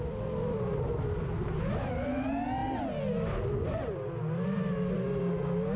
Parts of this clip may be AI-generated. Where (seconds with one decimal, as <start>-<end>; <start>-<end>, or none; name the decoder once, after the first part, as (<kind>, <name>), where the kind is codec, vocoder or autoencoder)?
none